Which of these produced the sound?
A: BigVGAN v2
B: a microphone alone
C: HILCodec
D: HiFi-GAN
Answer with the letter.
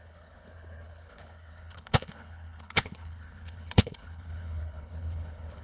C